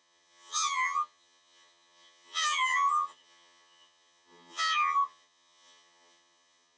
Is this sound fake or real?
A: fake